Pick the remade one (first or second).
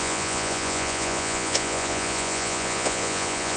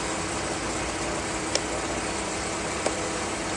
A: first